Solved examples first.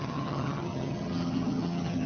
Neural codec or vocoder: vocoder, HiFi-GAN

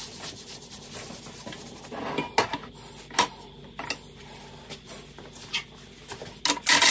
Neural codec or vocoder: none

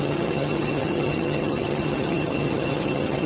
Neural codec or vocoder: vocoder, HiFi-GAN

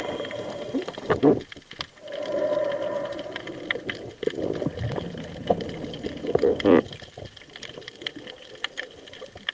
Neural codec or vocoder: none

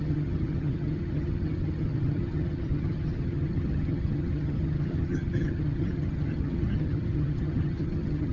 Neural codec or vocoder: vocoder, HiFi-GAN